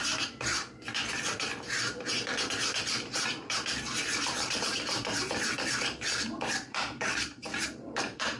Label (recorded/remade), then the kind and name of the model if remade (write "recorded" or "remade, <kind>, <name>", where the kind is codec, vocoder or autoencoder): remade, vocoder, BigVGAN v2